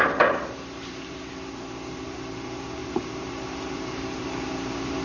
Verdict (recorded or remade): remade